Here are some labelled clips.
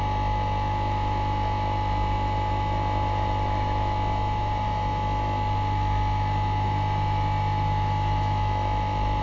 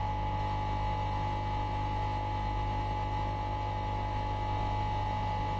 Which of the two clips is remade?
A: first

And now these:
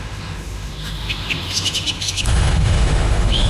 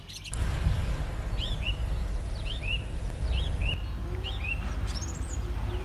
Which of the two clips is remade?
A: first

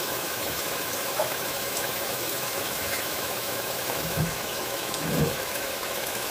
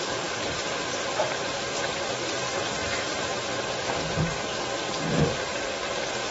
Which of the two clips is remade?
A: first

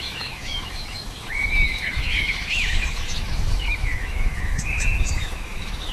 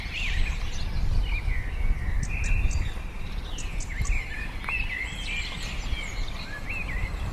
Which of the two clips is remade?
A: first